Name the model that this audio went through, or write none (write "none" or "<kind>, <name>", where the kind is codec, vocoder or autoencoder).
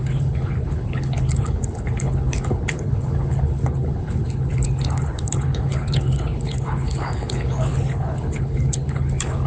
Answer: codec, HILCodec